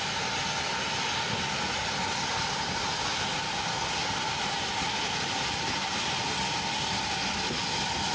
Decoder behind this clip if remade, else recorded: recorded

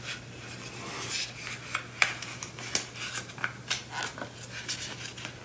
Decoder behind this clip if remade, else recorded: recorded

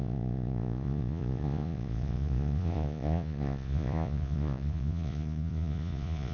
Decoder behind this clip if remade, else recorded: remade, vocoder, Vocos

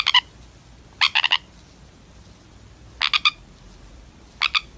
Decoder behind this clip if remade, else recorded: recorded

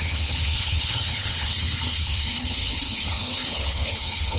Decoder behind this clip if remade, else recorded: remade, codec, HILCodec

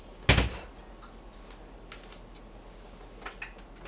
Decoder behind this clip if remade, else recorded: recorded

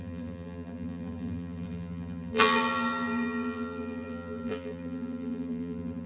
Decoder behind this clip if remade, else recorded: remade, vocoder, BigVGAN v2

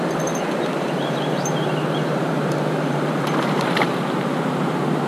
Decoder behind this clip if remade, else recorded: remade, vocoder, BigVGAN v2